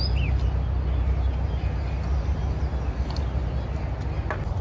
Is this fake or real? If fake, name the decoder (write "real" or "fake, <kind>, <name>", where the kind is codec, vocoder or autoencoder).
real